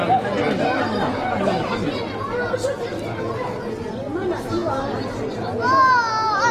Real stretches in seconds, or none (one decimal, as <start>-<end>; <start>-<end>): 0.0-6.5